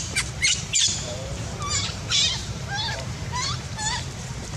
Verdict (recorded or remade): remade